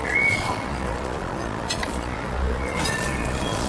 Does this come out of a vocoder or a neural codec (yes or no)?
yes